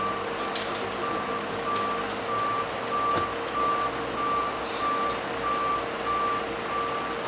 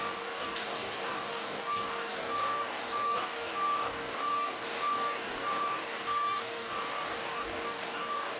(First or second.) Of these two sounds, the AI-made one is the second